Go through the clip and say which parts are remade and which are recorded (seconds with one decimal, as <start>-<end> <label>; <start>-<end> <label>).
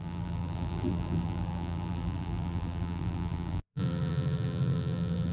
0.0-5.3 remade